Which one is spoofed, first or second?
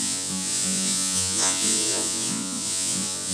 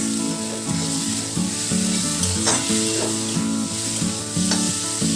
first